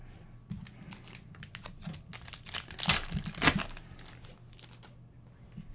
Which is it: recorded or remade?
recorded